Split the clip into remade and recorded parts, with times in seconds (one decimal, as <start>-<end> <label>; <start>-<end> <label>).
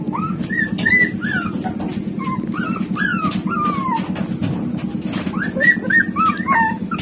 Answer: 0.0-7.0 recorded